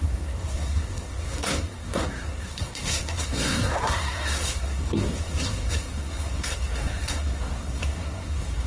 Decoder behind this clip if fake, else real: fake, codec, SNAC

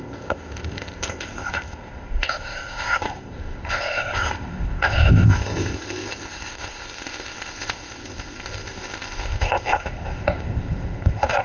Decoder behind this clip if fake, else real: fake, codec, ZipCodec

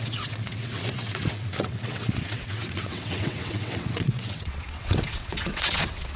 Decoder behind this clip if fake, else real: fake, vocoder, WaveNeXt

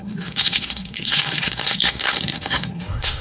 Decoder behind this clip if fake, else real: fake, codec, SNAC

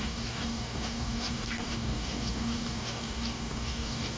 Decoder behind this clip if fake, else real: fake, codec, DAC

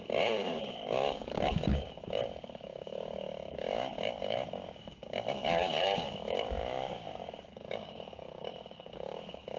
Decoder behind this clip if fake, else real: fake, codec, DAC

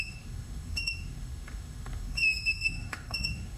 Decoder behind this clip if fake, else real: fake, autoencoder, DAC-VAE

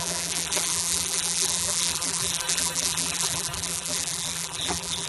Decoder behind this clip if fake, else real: fake, vocoder, BigVGAN v2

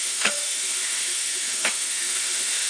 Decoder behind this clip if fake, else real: fake, autoencoder, DAC-VAE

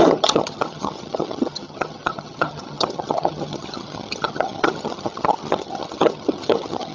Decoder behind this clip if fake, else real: fake, vocoder, HiFi-GAN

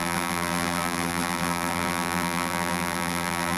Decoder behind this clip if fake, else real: fake, vocoder, BigVGAN v2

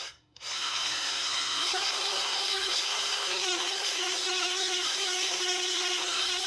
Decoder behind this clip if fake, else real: fake, codec, SNAC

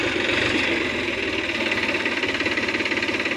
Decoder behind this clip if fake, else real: real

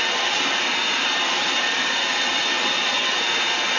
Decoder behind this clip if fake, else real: real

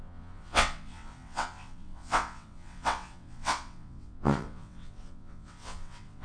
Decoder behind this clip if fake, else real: fake, vocoder, WaveNeXt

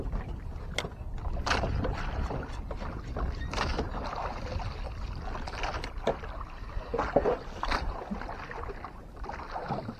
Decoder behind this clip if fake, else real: real